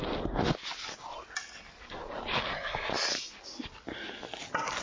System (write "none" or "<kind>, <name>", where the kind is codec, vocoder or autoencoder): none